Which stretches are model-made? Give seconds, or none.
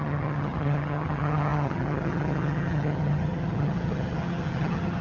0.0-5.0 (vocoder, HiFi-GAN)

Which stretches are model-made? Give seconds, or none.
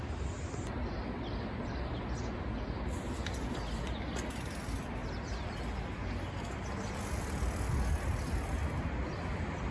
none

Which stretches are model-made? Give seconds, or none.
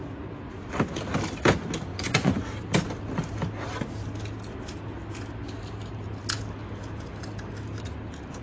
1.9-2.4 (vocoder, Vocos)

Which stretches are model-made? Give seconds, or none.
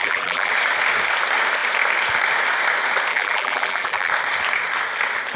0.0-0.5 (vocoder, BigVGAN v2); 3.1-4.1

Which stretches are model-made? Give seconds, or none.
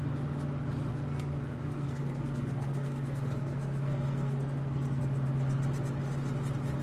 0.9-5.0 (codec, SNAC)